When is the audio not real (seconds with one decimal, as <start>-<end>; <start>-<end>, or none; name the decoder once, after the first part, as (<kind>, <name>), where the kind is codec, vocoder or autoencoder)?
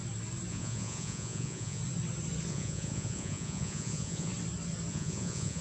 0.5-1.8 (vocoder, Vocos); 2.5-4.3; 4.9-5.6